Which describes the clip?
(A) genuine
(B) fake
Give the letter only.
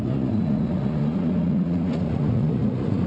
B